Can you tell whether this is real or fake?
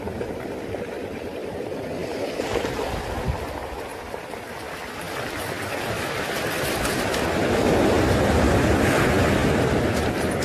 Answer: fake